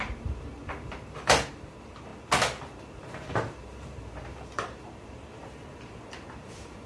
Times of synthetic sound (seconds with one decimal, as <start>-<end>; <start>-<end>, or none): 0.0-2.1; 3.1-6.9